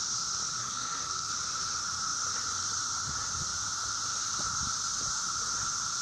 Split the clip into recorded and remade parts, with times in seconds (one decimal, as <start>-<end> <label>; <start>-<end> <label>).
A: 0.0-0.6 recorded; 0.6-1.3 remade; 1.3-6.0 recorded